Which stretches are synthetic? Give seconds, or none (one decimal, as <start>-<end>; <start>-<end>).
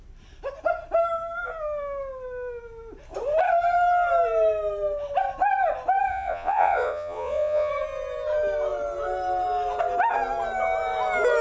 6.1-7.7